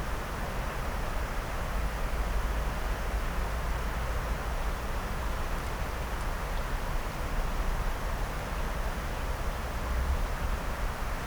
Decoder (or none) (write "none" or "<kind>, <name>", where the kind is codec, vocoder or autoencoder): none